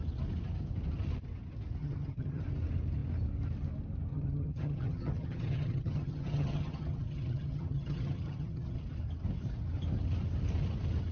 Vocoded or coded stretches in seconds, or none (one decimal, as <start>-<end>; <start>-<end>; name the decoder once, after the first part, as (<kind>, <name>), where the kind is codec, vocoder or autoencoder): 1.8-2.4 (vocoder, HiFi-GAN); 4.1-8.8